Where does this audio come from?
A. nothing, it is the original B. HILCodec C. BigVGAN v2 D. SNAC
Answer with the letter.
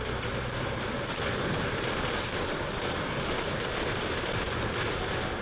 A